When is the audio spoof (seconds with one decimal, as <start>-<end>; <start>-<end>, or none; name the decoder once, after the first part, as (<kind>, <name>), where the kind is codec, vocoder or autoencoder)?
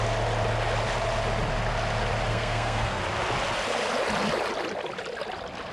2.3-3.0 (codec, SNAC)